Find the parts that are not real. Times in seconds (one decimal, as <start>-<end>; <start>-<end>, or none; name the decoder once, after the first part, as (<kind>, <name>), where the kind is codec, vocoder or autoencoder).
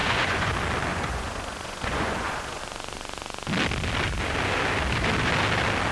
0.0-0.5 (vocoder, Vocos); 0.9-2.6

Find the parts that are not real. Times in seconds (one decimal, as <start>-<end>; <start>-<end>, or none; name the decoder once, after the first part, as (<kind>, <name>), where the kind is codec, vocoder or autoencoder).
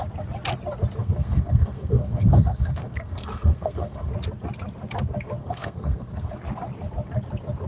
1.0-4.1 (codec, SNAC); 5.4-6.3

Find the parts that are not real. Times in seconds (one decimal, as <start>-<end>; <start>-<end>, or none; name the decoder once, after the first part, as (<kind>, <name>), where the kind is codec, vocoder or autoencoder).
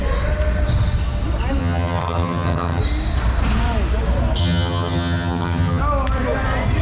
1.6-2.8 (vocoder, HiFi-GAN); 4.4-5.8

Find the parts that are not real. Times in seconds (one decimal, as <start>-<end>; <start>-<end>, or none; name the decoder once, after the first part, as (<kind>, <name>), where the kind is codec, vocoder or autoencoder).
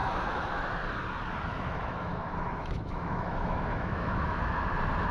0.0-0.7 (autoencoder, DAC-VAE); 1.5-4.6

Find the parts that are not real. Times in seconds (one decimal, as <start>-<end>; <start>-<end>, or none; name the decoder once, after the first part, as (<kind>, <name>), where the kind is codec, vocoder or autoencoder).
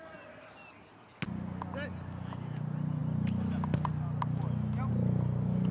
none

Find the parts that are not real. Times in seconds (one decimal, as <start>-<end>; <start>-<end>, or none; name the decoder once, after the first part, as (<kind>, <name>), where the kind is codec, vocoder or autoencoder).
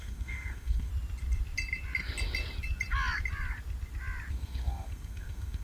0.0-0.9 (codec, SNAC); 4.3-5.6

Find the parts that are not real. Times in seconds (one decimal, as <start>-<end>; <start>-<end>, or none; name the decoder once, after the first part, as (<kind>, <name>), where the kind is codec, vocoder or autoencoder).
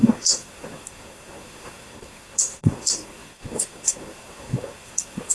0.0-5.3 (codec, SNAC)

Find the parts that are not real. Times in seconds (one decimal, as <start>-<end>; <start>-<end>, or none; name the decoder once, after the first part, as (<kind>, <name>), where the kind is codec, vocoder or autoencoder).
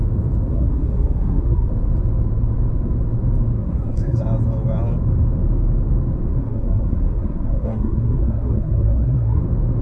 0.5-1.7 (codec, SNAC); 3.6-4.2; 6.4-9.4